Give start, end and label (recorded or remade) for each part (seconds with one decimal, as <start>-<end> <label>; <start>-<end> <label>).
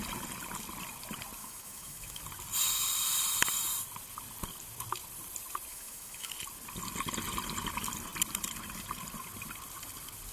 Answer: 0.0-1.4 recorded; 1.4-2.2 remade; 2.2-5.7 recorded; 5.7-6.3 remade; 6.3-10.3 recorded